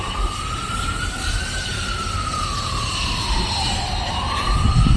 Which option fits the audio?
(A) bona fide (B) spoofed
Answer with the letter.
B